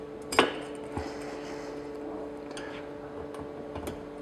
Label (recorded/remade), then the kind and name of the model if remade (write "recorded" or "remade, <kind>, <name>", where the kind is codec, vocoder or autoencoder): recorded